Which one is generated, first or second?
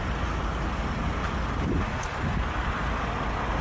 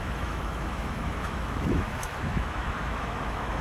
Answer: second